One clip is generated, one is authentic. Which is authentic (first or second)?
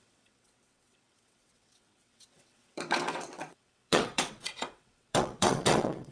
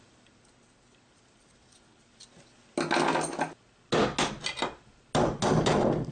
second